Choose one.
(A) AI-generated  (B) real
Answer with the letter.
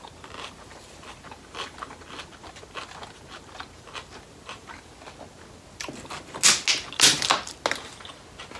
B